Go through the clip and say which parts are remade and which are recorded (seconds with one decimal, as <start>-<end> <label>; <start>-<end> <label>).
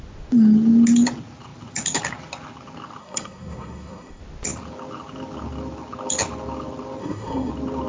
0.0-3.0 recorded; 3.0-4.2 remade; 4.2-7.0 recorded; 7.0-7.5 remade; 7.5-7.9 recorded